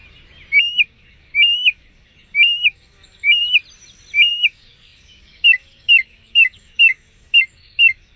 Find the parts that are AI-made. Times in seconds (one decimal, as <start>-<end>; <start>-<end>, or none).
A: 0.6-3.4; 4.3-8.2